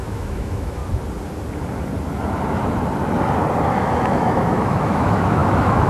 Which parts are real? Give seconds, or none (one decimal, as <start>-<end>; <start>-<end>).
0.8-3.7